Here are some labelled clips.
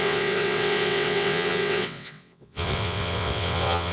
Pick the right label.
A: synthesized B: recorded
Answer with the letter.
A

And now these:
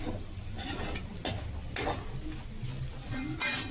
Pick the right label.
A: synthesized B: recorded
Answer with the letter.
B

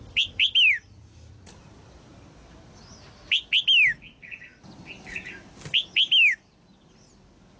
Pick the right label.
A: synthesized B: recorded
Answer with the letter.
B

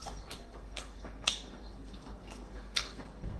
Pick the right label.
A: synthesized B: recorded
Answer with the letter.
A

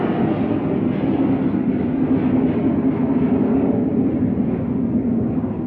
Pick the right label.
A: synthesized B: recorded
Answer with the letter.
B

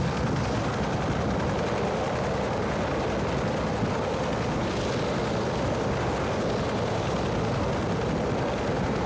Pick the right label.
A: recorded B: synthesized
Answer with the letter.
A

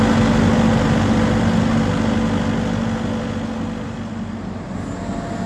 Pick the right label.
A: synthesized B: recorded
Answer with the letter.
B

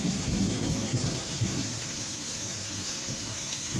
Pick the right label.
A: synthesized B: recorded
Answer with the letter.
A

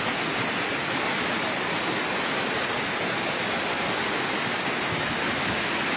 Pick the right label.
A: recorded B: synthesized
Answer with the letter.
A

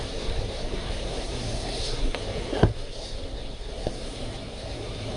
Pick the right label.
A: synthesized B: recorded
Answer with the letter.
A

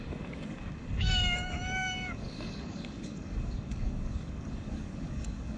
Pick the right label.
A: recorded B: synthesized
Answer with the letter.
B